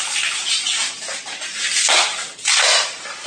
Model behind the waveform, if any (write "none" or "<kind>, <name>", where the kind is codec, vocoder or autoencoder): none